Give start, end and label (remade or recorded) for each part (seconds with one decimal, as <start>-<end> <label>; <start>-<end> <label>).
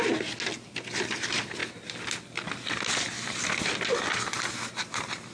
0.0-5.3 recorded